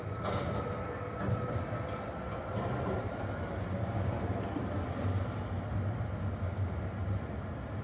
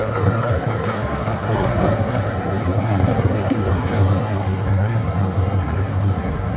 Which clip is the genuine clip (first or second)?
first